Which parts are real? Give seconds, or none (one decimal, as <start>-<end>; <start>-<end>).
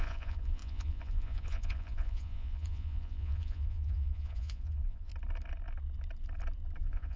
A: 5.1-6.8